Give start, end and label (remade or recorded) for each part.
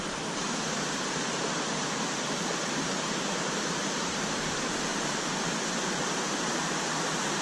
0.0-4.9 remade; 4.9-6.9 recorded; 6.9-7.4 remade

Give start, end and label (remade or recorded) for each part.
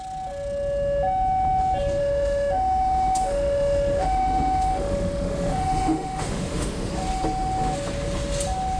0.0-2.0 recorded; 2.0-6.9 remade; 6.9-8.8 recorded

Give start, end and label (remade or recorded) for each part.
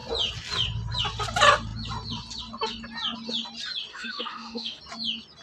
0.0-3.9 recorded; 3.9-4.8 remade; 4.8-5.4 recorded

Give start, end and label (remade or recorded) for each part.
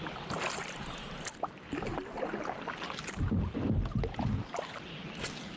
0.0-5.6 recorded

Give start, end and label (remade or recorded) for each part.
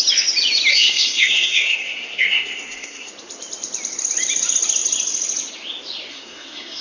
0.0-0.7 recorded; 0.7-3.1 remade; 3.1-6.1 recorded; 6.1-6.8 remade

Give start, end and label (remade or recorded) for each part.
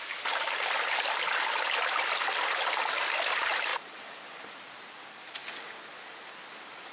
0.0-3.7 recorded; 3.7-5.5 remade; 5.5-6.9 recorded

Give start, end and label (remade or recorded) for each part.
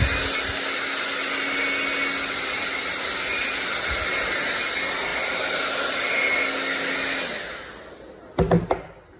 0.0-9.2 recorded